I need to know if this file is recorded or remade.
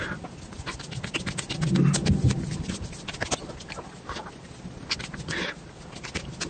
recorded